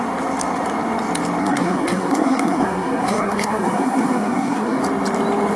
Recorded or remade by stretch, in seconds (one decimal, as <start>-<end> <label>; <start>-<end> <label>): 0.0-1.4 recorded; 1.4-4.8 remade; 4.8-5.6 recorded